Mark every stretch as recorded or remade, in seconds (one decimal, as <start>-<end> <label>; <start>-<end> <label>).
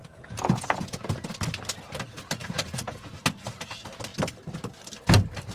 0.0-1.3 remade; 1.3-2.4 recorded; 2.4-3.2 remade; 3.2-5.5 recorded